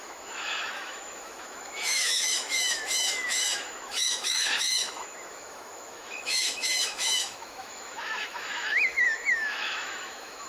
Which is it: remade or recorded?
remade